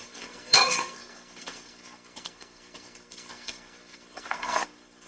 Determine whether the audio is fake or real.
fake